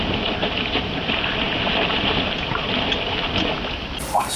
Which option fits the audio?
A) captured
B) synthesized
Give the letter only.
A